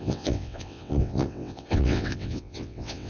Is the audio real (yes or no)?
no